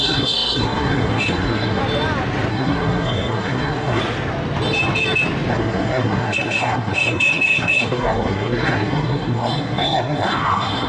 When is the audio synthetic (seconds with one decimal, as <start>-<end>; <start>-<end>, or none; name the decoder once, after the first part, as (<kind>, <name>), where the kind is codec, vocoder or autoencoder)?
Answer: 0.0-1.8 (codec, SNAC); 2.5-4.0; 5.5-10.9